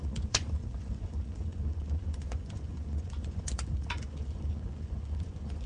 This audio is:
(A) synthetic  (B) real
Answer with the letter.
A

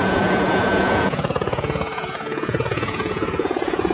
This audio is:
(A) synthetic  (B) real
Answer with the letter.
A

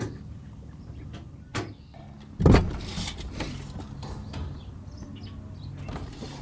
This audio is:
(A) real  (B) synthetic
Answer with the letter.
A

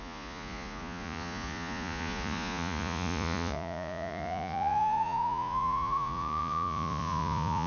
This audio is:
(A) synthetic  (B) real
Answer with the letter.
A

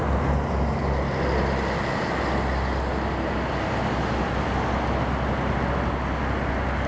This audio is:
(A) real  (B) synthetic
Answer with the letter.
A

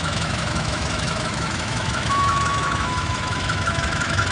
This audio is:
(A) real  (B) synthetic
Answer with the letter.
B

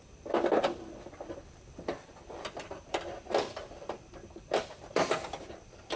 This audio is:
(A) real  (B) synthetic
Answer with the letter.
B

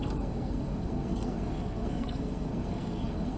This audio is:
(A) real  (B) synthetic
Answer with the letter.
B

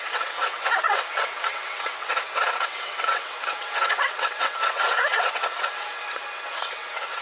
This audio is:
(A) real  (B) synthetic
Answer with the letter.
B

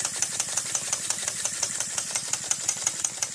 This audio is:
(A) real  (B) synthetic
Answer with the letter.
B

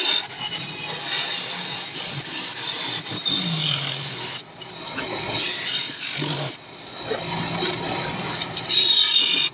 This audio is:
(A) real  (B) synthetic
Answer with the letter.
A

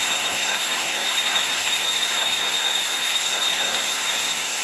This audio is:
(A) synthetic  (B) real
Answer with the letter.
A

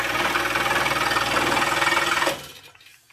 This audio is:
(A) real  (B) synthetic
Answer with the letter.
A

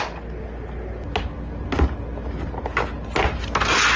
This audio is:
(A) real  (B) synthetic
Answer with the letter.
A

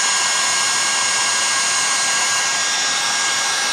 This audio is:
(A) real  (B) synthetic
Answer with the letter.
A